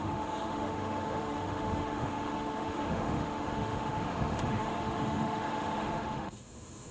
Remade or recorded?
remade